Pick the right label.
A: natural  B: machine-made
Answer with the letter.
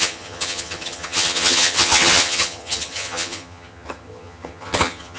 B